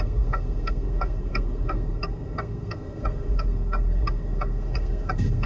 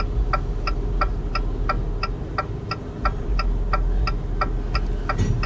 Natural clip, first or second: second